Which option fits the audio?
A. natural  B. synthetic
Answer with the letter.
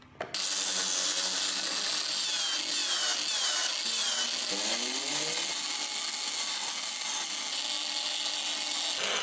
A